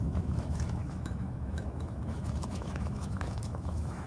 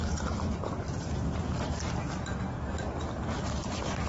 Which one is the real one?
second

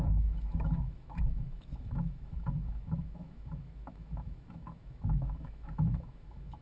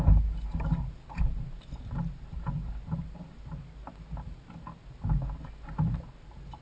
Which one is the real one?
second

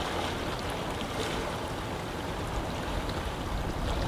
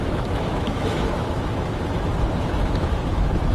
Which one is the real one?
first